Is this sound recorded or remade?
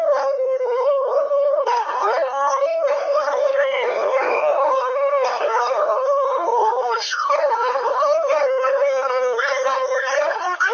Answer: remade